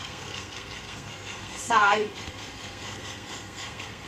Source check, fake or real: fake